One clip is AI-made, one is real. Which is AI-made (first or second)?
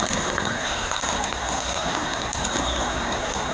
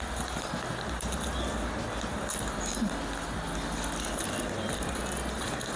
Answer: first